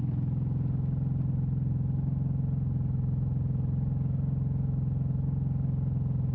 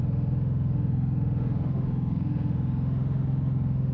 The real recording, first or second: first